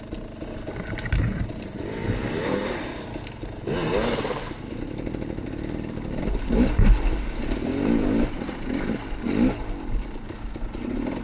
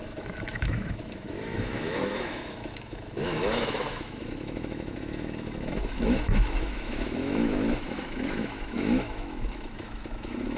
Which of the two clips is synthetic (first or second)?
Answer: second